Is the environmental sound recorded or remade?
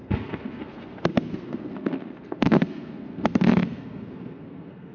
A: remade